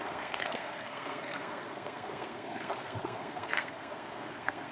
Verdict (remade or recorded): remade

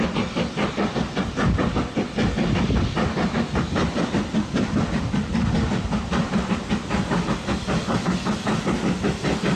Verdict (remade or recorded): recorded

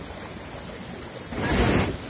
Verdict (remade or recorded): recorded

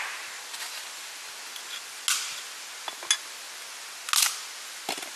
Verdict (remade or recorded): recorded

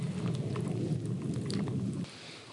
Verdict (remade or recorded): recorded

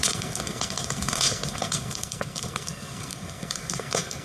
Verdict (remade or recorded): remade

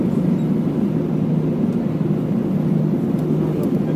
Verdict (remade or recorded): recorded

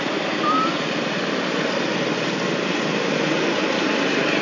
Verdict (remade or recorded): recorded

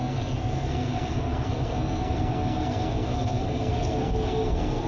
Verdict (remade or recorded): remade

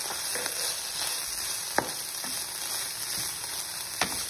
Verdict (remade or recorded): recorded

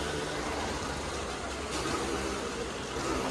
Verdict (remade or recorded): recorded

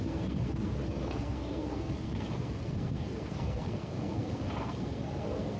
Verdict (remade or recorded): remade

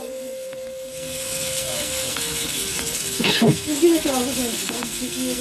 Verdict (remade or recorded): remade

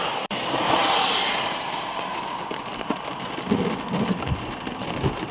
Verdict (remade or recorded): recorded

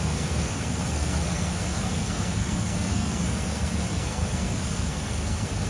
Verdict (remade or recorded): remade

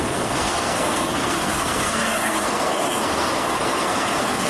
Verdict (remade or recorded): remade